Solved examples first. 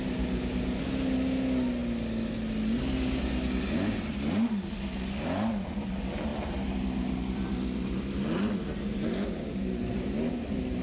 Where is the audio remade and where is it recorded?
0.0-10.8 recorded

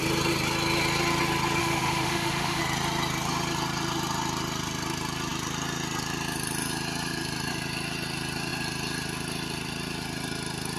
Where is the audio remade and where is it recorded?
0.0-1.6 recorded; 1.6-2.6 remade; 2.6-10.8 recorded